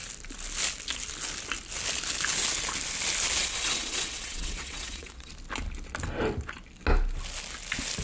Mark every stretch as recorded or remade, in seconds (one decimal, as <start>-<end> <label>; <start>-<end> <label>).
0.0-3.4 recorded; 3.4-5.3 remade; 5.3-8.0 recorded